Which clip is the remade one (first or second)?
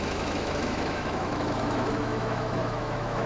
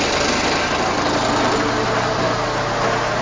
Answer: first